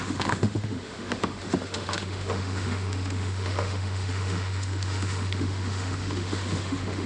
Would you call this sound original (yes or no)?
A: no